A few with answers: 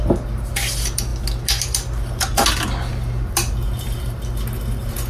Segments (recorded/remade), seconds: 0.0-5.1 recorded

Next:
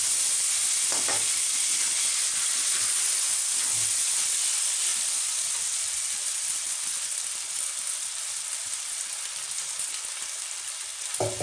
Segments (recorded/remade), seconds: 0.0-11.4 recorded

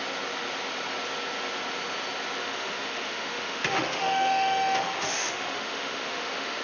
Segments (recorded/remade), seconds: 0.0-2.4 recorded; 2.4-6.6 remade

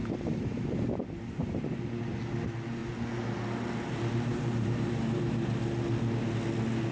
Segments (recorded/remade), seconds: 0.0-1.8 remade; 1.8-4.3 recorded; 4.3-5.4 remade; 5.4-6.9 recorded

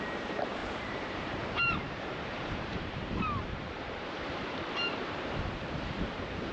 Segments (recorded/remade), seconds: 0.0-6.5 remade

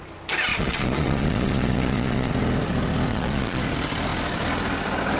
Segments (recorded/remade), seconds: 0.0-0.5 recorded; 0.5-2.3 remade; 2.3-3.1 recorded; 3.1-3.6 remade; 3.6-5.2 recorded

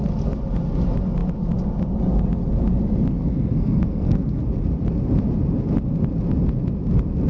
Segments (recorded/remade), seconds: 0.0-3.2 recorded; 3.2-4.4 remade; 4.4-7.3 recorded

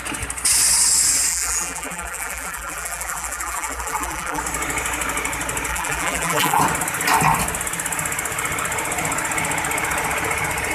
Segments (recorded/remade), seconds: 0.0-1.3 recorded; 1.3-4.4 remade; 4.4-5.7 recorded; 5.7-6.6 remade; 6.6-10.7 recorded